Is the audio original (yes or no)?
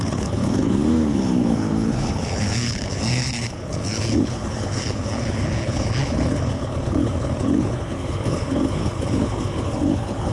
no